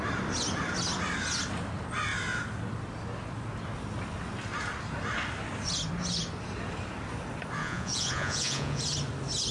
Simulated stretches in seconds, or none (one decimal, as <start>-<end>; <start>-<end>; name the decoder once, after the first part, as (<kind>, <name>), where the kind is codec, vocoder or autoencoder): 7.6-8.8 (vocoder, Vocos)